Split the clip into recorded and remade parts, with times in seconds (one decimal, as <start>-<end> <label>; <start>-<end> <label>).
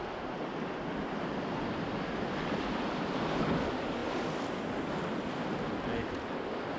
0.0-6.8 recorded